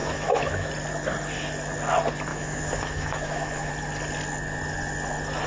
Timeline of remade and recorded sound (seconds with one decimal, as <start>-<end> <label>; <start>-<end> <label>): 0.0-0.7 remade; 0.7-2.3 recorded; 2.3-3.7 remade; 3.7-5.5 recorded

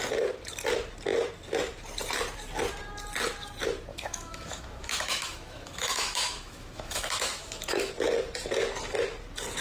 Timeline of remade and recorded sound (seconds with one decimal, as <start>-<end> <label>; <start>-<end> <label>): 0.0-3.9 recorded; 3.9-7.9 remade; 7.9-9.6 recorded

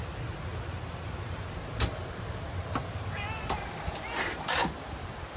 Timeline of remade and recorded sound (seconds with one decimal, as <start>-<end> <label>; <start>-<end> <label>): 0.0-5.4 recorded

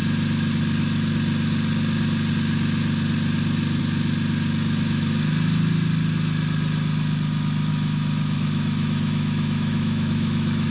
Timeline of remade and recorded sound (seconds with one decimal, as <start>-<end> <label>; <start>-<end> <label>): 0.0-7.7 recorded; 7.7-10.7 remade

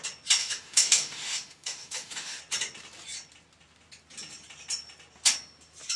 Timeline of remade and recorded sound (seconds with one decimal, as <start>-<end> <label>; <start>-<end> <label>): 0.0-0.4 recorded; 0.4-2.4 remade; 2.4-6.0 recorded

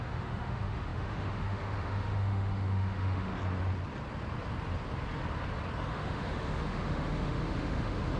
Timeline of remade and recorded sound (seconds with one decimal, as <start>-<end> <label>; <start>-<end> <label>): 0.0-3.3 remade; 3.3-5.9 recorded; 5.9-8.2 remade